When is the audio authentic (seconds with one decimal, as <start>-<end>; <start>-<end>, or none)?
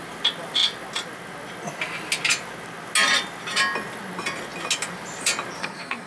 0.0-5.6